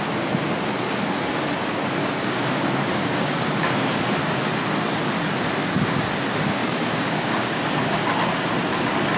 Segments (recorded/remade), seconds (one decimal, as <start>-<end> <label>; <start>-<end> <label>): 0.0-2.0 recorded; 2.0-4.4 remade; 4.4-6.6 recorded; 6.6-8.5 remade; 8.5-9.2 recorded